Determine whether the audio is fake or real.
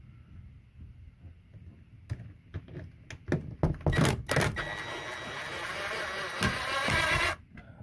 real